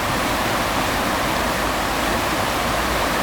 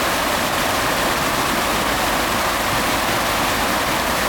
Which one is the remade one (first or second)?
first